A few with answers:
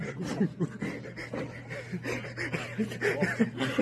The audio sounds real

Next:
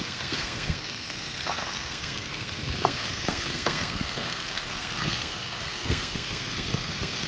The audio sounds fake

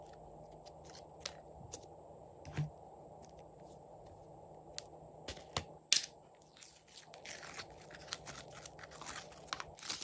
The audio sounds real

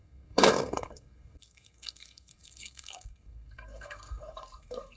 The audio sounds fake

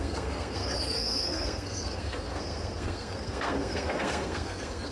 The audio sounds fake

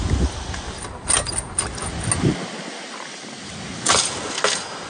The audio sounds real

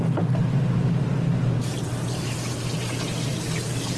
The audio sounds real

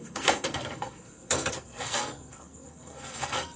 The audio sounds fake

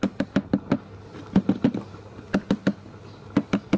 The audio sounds real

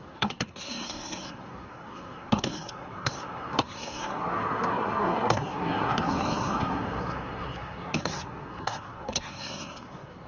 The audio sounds fake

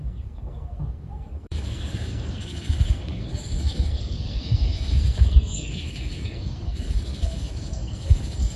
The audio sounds fake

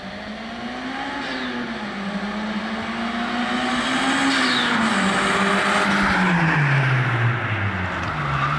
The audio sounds real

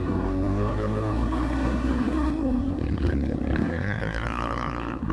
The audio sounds fake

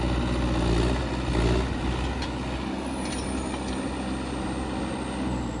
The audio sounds real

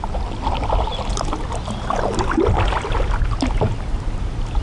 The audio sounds real